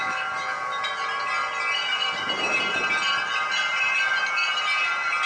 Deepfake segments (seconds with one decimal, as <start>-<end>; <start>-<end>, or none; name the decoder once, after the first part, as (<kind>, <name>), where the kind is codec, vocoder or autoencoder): none